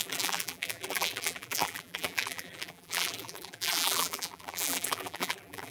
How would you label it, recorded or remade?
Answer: remade